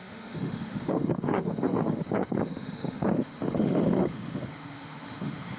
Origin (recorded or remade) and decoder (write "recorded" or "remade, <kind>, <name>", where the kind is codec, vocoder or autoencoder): remade, autoencoder, DAC-VAE